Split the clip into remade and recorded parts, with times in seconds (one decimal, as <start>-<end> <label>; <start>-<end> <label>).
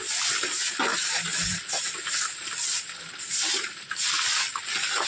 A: 0.0-0.9 recorded; 0.9-3.9 remade; 3.9-5.1 recorded